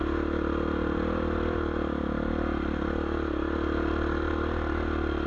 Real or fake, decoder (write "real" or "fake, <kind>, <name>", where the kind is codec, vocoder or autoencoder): real